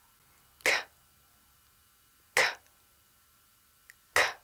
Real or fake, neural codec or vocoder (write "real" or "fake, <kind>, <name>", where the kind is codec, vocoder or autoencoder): real